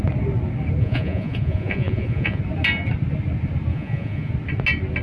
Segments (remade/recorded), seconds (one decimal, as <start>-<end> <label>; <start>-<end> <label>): 0.0-0.8 recorded; 0.8-2.4 remade; 2.4-3.7 recorded; 3.7-4.3 remade; 4.3-5.0 recorded